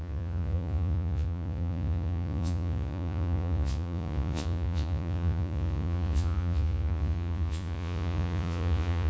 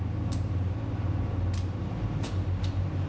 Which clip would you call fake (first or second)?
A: first